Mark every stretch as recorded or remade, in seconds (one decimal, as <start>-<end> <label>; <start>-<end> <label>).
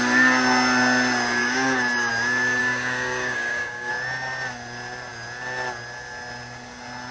0.0-1.4 recorded; 1.4-2.1 remade; 2.1-2.6 recorded; 2.6-3.9 remade; 3.9-7.1 recorded